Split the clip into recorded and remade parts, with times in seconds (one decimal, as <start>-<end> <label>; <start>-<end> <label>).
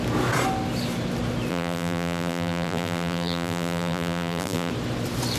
0.0-1.5 recorded; 1.5-4.7 remade; 4.7-5.4 recorded